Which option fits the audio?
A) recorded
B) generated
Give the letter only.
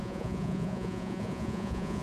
B